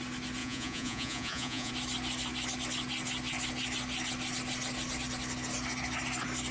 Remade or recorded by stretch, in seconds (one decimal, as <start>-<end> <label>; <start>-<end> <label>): 0.0-0.4 recorded; 0.4-1.7 remade; 1.7-6.5 recorded